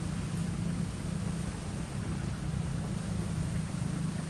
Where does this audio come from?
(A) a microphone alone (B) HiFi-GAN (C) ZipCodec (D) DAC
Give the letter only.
A